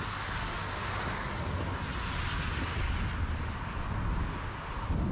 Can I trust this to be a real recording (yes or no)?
yes